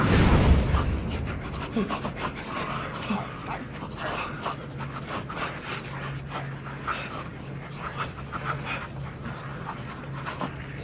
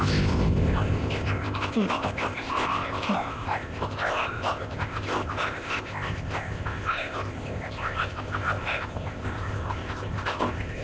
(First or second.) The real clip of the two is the first